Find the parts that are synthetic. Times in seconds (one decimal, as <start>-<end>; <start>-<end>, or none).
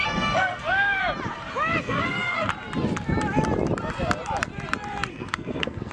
0.0-1.0; 1.8-2.5; 5.1-5.9